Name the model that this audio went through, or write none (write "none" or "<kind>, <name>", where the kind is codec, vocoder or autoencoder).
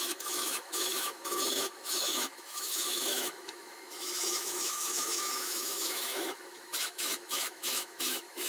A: autoencoder, DAC-VAE